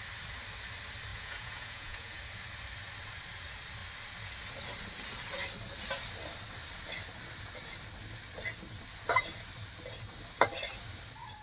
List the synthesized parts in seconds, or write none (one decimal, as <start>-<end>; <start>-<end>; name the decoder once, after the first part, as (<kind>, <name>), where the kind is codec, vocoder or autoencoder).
1.1-2.2 (vocoder, Vocos)